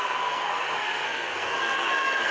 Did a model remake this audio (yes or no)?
yes